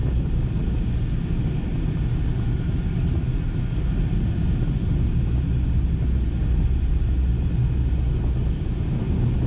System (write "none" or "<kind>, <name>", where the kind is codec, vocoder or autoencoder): none